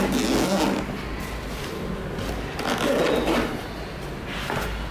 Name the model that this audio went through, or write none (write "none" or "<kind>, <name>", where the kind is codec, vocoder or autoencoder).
none